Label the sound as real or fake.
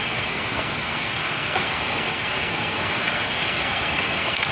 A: fake